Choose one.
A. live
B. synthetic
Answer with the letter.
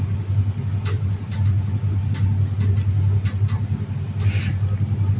A